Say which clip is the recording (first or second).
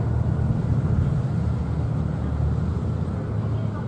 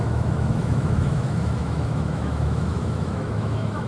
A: first